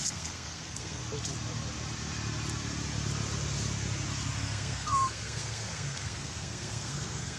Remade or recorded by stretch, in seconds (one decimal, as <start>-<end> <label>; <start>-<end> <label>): 0.0-1.0 remade; 1.0-4.4 recorded; 4.4-7.4 remade